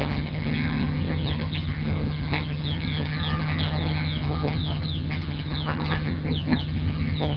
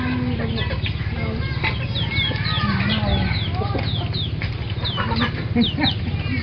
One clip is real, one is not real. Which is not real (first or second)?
first